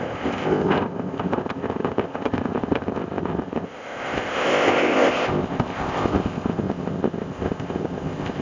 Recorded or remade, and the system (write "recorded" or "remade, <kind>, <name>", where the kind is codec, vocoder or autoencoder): remade, codec, ZipCodec